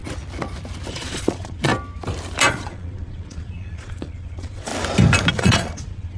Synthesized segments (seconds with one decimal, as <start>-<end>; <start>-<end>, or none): 0.9-1.7; 2.5-4.7; 5.3-6.2